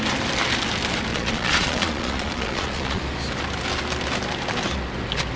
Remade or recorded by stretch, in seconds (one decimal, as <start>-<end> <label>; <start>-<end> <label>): 0.0-1.1 recorded; 1.1-3.0 remade; 3.0-5.4 recorded